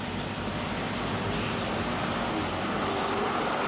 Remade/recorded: recorded